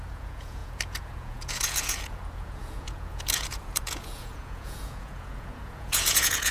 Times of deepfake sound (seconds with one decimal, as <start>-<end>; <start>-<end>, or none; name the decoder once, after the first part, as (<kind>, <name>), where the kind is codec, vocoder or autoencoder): 0.0-6.5 (vocoder, Vocos)